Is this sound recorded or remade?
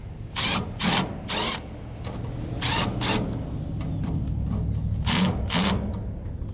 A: recorded